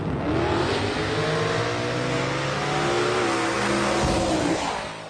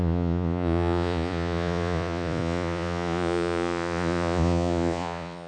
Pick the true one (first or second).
first